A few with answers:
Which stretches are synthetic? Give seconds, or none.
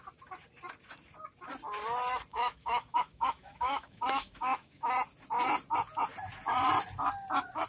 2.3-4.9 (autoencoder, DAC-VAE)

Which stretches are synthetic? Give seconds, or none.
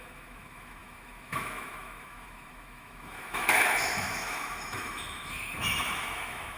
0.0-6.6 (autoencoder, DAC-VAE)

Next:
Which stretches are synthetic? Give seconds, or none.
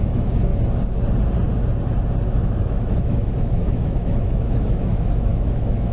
0.0-0.5 (autoencoder, DAC-VAE); 2.3-5.9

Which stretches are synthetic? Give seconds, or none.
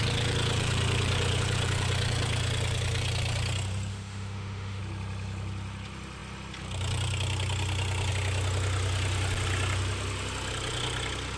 3.9-4.8 (autoencoder, DAC-VAE)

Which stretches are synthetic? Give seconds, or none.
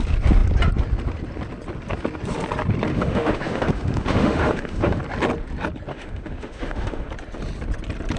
2.9-5.0 (autoencoder, DAC-VAE); 5.9-7.1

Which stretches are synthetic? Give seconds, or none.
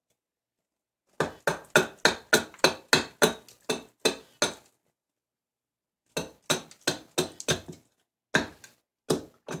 none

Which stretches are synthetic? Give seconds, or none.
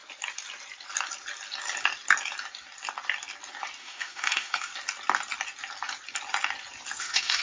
3.8-4.7 (autoencoder, DAC-VAE); 7.0-7.4